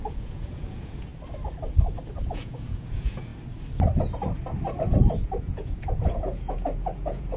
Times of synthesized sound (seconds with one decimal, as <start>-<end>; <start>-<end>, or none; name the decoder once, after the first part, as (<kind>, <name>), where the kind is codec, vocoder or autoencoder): 0.0-1.1 (vocoder, Vocos); 2.2-3.3; 5.1-7.4